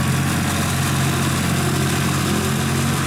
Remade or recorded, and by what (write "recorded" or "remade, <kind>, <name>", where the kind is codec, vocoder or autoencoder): recorded